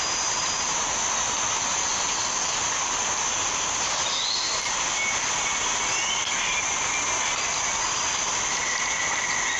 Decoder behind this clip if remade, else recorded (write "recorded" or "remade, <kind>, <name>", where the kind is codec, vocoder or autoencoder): recorded